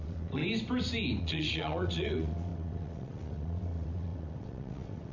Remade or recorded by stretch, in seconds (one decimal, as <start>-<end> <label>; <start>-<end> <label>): 0.0-0.4 remade; 0.4-1.2 recorded; 1.2-5.1 remade